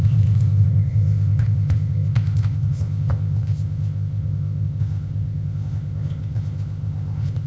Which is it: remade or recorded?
remade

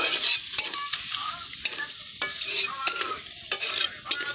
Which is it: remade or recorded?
recorded